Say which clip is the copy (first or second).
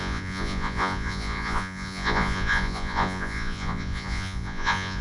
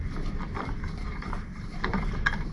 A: first